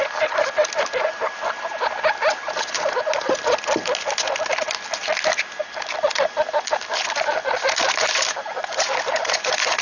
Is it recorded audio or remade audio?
recorded